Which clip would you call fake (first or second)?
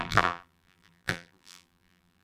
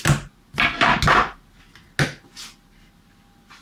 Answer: first